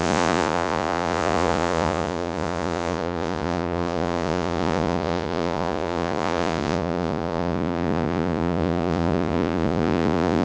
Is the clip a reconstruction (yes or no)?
yes